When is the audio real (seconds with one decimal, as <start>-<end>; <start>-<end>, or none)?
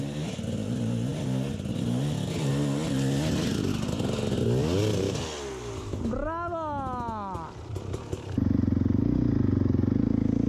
0.0-10.5